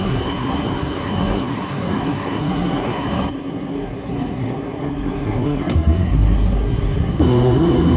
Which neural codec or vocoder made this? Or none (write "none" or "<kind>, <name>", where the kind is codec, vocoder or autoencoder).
codec, SNAC